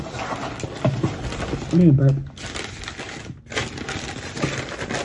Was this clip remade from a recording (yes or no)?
no